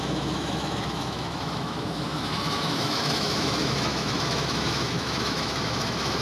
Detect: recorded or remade remade